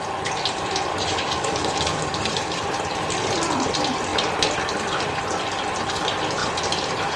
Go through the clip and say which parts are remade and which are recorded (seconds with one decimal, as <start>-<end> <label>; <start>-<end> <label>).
0.0-0.9 recorded; 0.9-2.6 remade; 2.6-7.2 recorded